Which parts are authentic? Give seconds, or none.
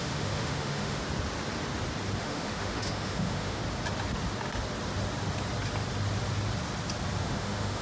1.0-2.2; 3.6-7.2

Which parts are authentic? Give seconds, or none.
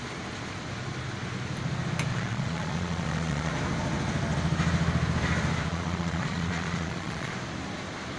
0.0-2.1; 3.5-5.7; 7.3-8.2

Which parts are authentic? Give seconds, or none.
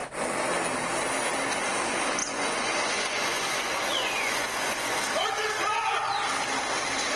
0.0-2.2; 5.0-7.2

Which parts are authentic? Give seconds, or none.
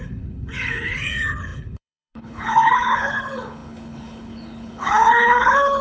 none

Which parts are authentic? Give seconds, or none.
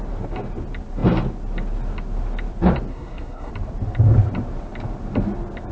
0.0-2.9; 3.5-5.7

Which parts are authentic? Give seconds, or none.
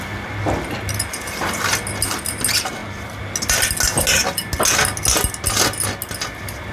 0.0-6.7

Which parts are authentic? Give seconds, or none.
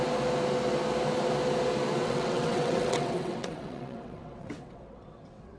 0.0-2.0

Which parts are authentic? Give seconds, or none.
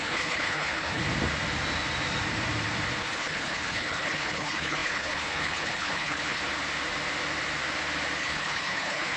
1.0-3.0; 6.4-8.2